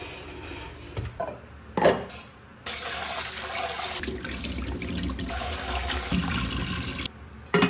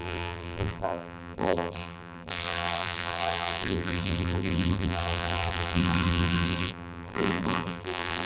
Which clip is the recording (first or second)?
first